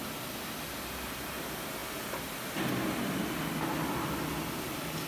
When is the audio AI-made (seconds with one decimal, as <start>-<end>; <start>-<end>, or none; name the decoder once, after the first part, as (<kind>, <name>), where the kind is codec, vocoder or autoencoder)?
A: none